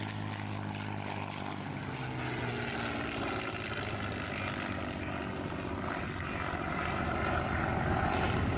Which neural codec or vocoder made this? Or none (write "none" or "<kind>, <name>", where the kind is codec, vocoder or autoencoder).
none